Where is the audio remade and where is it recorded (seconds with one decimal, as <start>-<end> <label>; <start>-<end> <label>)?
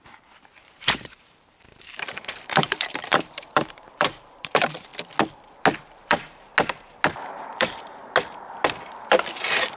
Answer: 0.0-4.9 remade; 4.9-6.0 recorded; 6.0-6.5 remade; 6.5-7.3 recorded; 7.3-8.0 remade; 8.0-8.8 recorded; 8.8-9.8 remade